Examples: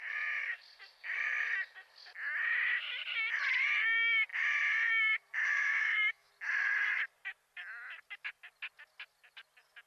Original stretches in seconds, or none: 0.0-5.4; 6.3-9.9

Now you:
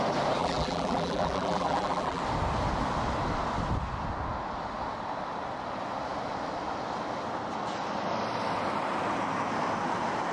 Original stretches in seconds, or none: 0.0-0.4; 2.2-10.3

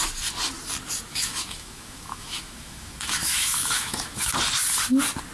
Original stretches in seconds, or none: 0.0-1.1; 4.3-5.3

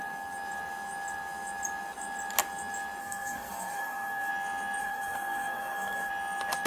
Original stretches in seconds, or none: 0.0-3.0; 4.3-4.8; 6.1-6.7

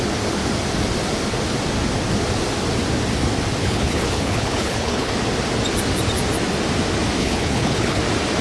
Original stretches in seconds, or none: 0.0-3.6; 5.1-7.2; 8.0-8.4

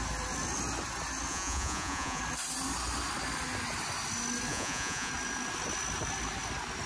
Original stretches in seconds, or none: 0.0-1.3; 2.2-4.5; 5.1-6.9

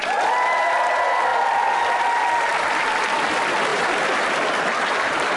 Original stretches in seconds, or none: 0.0-1.3; 2.1-2.5; 3.0-4.7

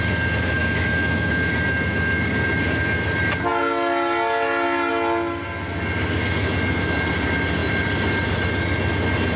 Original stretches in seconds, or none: 0.0-0.6; 1.3-9.4